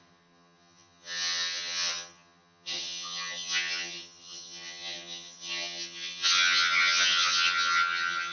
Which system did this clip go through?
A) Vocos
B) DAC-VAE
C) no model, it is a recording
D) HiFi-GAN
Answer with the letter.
D